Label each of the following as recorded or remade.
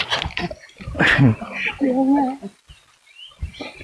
recorded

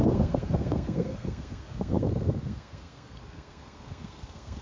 remade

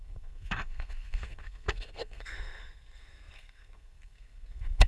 remade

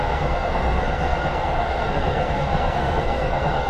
remade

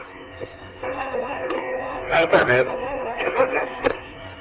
remade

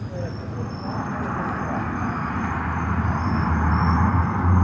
recorded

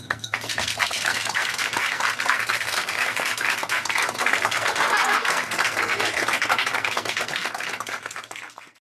remade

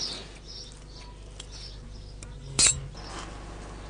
recorded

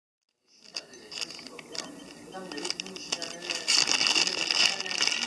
recorded